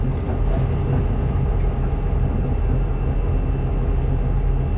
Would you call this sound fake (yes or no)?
no